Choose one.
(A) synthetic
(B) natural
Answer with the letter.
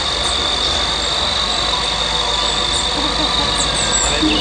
B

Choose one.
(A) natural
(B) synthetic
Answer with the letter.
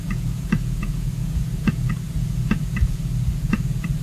B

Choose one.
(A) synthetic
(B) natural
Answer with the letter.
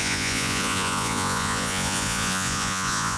A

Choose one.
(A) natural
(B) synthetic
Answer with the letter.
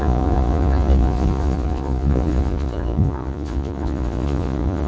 B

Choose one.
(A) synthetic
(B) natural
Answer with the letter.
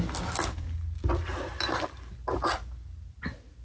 B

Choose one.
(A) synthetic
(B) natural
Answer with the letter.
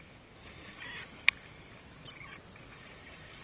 B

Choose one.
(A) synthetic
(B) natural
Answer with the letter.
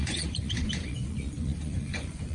A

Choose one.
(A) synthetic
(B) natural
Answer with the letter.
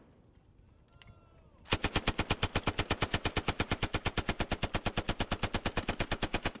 B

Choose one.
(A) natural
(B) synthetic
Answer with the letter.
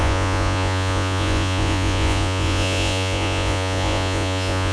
B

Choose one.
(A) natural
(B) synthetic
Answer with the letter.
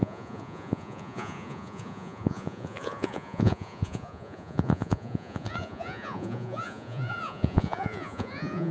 B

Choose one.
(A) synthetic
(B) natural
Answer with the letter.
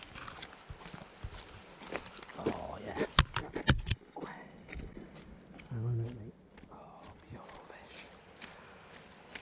B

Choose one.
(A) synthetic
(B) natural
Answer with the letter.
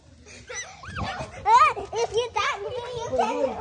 B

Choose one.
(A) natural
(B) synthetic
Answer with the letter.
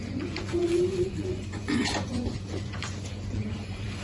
B